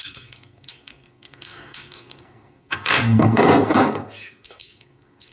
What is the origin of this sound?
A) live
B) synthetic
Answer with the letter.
B